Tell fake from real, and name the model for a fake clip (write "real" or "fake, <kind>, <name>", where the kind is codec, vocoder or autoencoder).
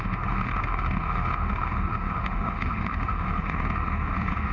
fake, autoencoder, DAC-VAE